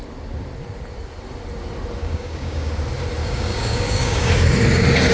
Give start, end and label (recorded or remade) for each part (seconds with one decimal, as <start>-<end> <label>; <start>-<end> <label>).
0.0-2.0 recorded; 2.0-2.7 remade; 2.7-3.2 recorded; 3.2-4.3 remade; 4.3-5.1 recorded

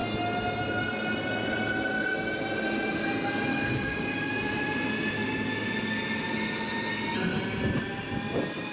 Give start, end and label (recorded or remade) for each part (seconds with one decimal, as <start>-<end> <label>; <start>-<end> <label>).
0.0-3.5 recorded; 3.5-4.3 remade; 4.3-8.7 recorded

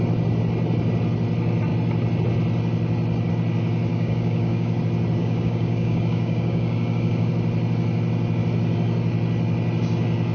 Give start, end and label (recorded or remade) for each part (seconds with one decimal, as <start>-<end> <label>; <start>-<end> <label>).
0.0-3.9 recorded; 3.9-4.8 remade; 4.8-5.2 recorded; 5.2-7.3 remade; 7.3-10.3 recorded